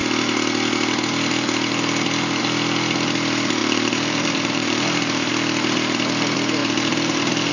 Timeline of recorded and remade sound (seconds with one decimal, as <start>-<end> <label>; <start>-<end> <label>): 0.0-3.6 recorded; 3.6-5.3 remade; 5.3-6.6 recorded; 6.6-7.5 remade